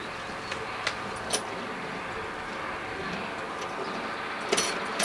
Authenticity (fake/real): real